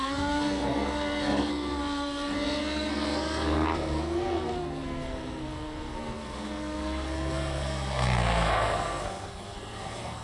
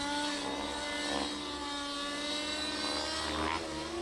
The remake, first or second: first